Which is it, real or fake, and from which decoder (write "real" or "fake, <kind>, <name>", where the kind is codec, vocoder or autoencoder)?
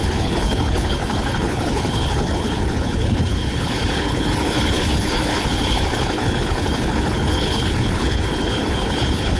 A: fake, codec, HILCodec